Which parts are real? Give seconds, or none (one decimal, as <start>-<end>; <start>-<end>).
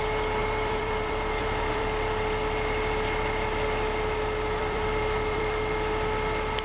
0.0-0.4; 2.1-4.6; 5.6-6.6